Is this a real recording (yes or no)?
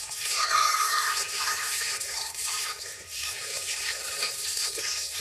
no